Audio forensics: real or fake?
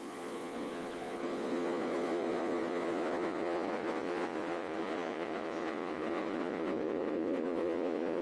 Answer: fake